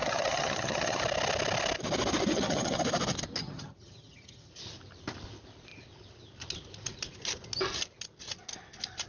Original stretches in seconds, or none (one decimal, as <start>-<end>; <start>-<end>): 1.0-2.3; 2.8-3.4; 4.5-9.1